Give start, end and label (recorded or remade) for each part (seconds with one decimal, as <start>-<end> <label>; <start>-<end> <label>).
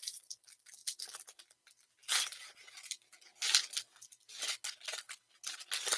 0.0-6.0 recorded